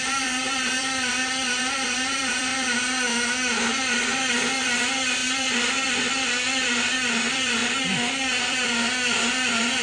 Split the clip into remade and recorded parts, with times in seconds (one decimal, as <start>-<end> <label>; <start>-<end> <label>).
0.0-2.5 remade; 2.5-4.3 recorded; 4.3-7.6 remade; 7.6-8.5 recorded; 8.5-9.8 remade